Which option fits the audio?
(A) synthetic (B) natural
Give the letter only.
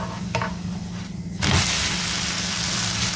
B